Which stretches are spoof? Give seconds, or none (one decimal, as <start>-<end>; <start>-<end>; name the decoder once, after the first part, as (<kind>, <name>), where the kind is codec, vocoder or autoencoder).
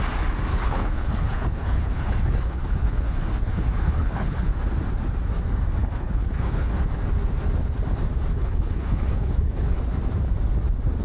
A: 0.5-4.5 (codec, HILCodec); 5.8-6.7; 8.3-9.8